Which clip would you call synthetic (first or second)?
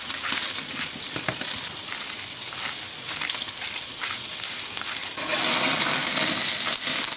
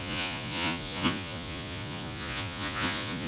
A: second